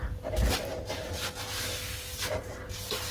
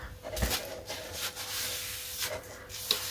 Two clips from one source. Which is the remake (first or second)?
first